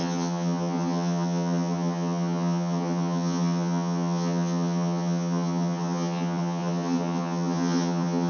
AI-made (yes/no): yes